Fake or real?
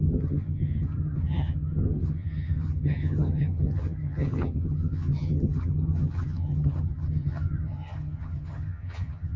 fake